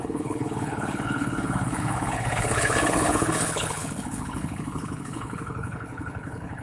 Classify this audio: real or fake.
fake